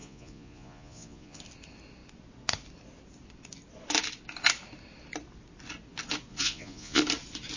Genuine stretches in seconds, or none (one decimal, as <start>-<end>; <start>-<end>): 1.4-6.3; 7.0-7.6